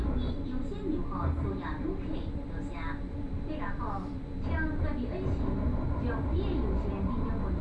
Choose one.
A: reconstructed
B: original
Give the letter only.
B